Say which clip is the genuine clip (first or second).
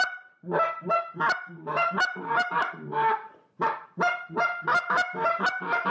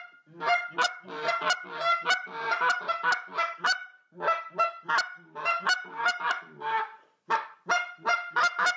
second